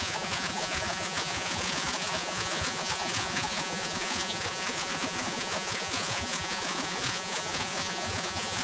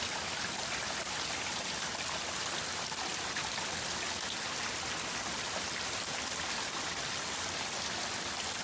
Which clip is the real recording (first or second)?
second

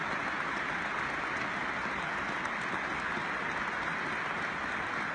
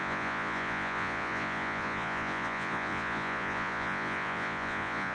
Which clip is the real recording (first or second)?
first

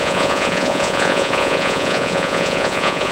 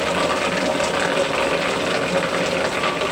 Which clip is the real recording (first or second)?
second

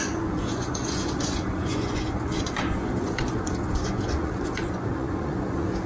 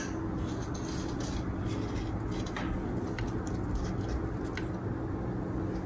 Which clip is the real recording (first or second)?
second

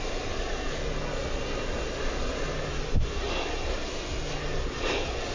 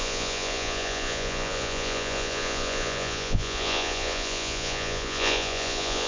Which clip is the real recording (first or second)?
first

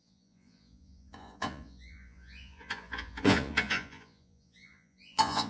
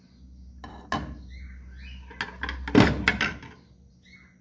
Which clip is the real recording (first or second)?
second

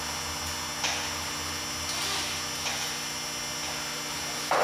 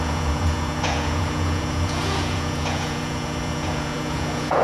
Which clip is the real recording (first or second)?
first